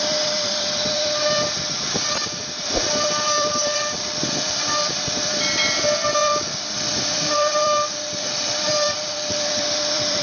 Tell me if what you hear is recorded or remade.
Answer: remade